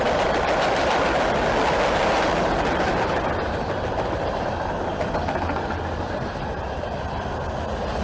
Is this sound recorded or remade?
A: recorded